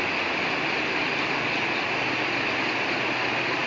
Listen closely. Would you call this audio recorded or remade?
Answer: recorded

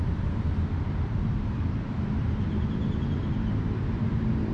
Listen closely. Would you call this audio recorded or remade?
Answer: remade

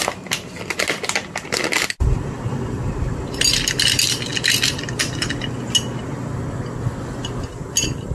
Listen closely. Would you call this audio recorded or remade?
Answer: recorded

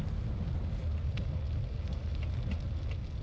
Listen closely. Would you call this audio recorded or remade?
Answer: recorded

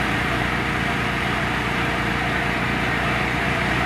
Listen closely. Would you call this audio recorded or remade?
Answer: remade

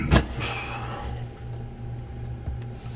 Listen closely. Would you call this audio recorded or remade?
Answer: recorded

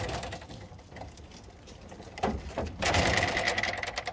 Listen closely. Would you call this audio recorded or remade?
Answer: remade